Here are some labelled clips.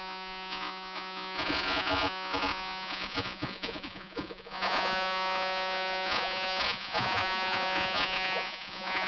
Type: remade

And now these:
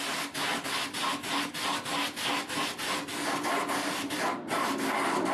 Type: recorded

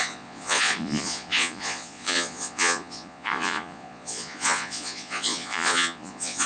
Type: remade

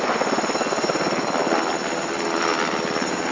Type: recorded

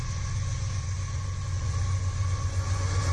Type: remade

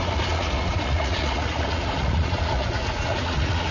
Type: remade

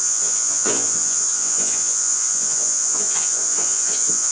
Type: remade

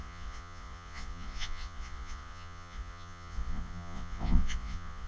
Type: remade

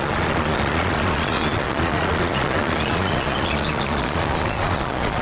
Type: remade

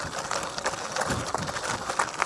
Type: recorded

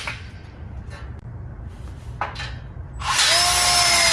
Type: recorded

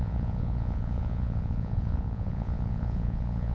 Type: remade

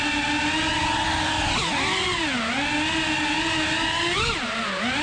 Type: recorded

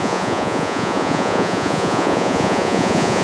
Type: remade